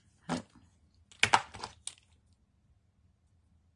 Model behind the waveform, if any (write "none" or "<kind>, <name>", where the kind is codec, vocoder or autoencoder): none